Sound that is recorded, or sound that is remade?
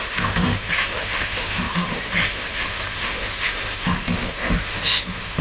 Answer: remade